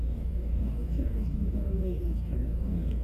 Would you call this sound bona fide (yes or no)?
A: no